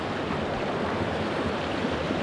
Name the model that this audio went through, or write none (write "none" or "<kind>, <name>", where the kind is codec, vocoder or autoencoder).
none